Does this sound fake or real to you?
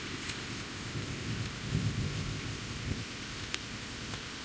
fake